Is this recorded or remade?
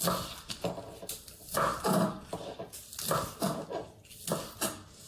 recorded